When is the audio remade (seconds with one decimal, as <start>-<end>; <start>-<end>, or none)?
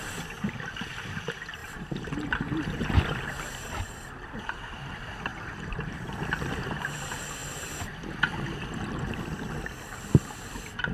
0.0-1.6; 3.4-10.9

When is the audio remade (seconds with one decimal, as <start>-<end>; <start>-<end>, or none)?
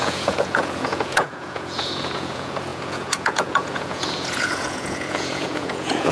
0.0-6.1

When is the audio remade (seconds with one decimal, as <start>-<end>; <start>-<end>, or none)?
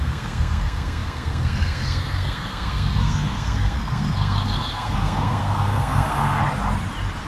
0.0-6.4